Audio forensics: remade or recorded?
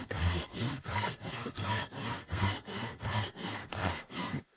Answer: remade